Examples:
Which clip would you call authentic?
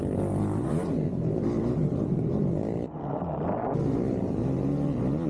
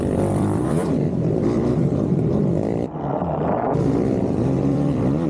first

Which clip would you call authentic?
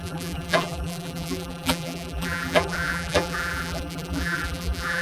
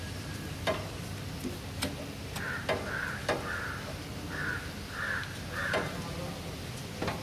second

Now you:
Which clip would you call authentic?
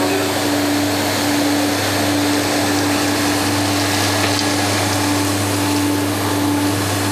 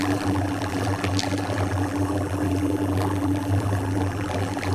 first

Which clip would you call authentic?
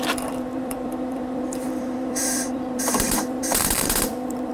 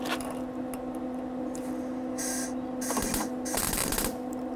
second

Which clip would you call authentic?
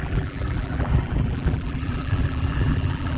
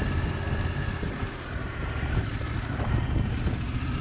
second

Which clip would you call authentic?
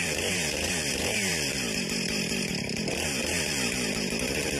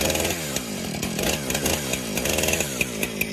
second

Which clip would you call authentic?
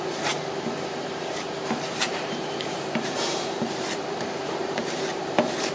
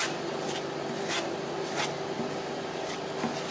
second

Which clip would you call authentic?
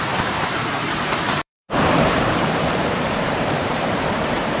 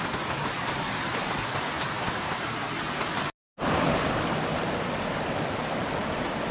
second